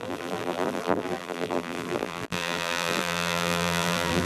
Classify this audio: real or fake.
fake